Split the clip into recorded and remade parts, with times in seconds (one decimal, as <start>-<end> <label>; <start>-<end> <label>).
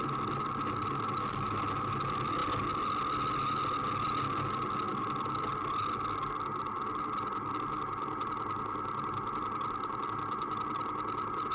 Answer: 0.0-11.5 recorded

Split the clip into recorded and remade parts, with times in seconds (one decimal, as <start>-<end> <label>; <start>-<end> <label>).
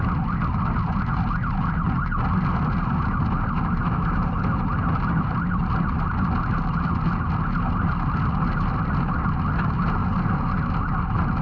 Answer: 0.0-11.4 recorded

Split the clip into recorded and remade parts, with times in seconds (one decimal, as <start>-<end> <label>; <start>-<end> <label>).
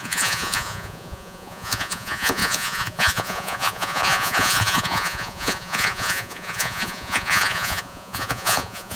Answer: 0.0-9.0 remade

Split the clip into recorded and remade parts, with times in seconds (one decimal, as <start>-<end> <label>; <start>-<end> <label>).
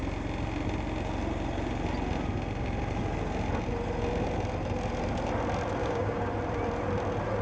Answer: 0.0-5.8 recorded; 5.8-6.3 remade; 6.3-7.4 recorded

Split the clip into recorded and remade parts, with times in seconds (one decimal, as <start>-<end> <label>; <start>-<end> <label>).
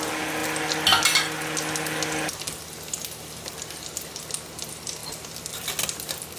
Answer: 0.0-6.4 recorded